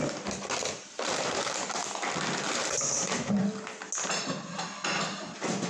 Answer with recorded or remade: recorded